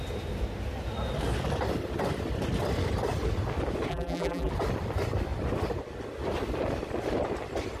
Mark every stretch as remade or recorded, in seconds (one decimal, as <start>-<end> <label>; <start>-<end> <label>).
0.0-3.9 recorded; 3.9-4.5 remade; 4.5-7.8 recorded